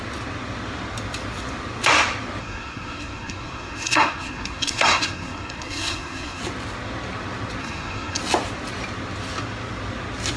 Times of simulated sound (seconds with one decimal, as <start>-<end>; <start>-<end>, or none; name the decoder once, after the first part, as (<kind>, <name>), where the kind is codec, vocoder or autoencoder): 2.4-6.4 (codec, SNAC); 7.6-8.2